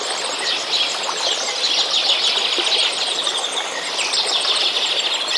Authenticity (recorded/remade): recorded